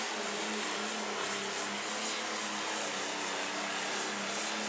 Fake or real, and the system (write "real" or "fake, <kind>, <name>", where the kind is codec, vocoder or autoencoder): real